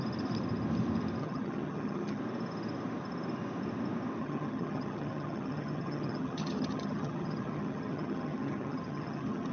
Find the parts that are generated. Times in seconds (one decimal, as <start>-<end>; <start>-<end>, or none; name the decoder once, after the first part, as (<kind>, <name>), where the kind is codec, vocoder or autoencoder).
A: 1.2-2.2 (vocoder, HiFi-GAN); 4.2-9.5